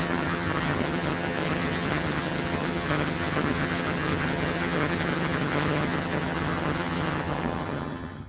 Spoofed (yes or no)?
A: yes